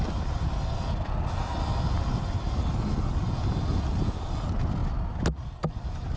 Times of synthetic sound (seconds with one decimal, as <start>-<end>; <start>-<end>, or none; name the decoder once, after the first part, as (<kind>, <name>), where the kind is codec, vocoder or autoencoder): none